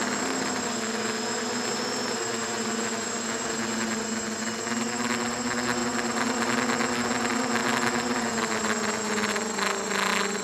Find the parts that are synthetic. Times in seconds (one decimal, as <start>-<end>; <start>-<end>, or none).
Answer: none